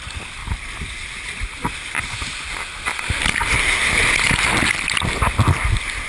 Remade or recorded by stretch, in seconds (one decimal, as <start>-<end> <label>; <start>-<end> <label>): 0.0-6.1 recorded